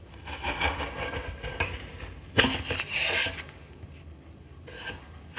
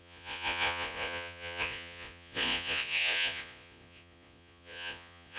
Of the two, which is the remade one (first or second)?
second